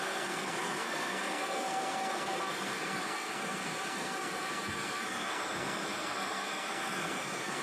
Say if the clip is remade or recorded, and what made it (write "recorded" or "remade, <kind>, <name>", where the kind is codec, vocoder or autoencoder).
remade, codec, SNAC